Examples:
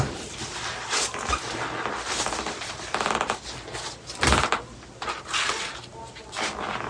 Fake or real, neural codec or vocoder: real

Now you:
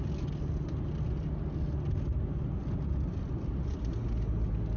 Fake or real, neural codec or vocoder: real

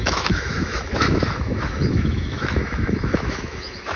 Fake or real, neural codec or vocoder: fake, autoencoder, DAC-VAE